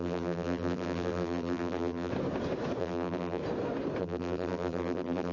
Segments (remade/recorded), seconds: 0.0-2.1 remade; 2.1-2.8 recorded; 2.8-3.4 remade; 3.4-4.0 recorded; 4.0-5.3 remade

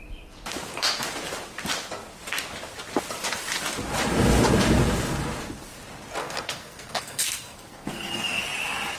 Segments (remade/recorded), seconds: 0.0-6.2 recorded; 6.2-8.4 remade; 8.4-9.0 recorded

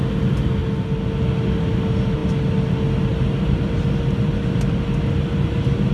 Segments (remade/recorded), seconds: 0.0-5.9 recorded

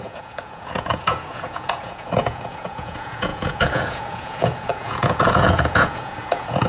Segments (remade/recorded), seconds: 0.0-6.7 remade

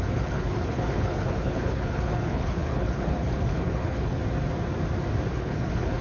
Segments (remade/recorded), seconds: 0.0-4.2 remade; 4.2-5.3 recorded; 5.3-6.0 remade

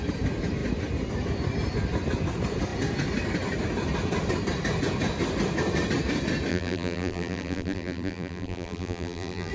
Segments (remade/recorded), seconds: 0.0-6.5 recorded; 6.5-9.5 remade

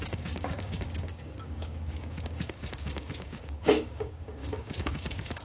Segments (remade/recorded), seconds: 0.0-5.4 remade

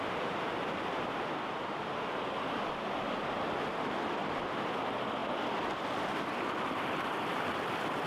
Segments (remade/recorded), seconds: 0.0-8.1 recorded